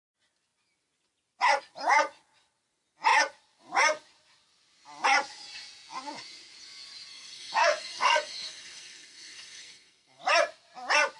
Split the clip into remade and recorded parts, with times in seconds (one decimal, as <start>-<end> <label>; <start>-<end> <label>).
0.0-7.1 recorded; 7.1-10.2 remade; 10.2-11.2 recorded